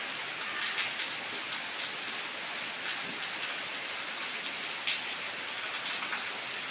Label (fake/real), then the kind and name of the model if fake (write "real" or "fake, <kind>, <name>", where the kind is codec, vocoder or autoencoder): real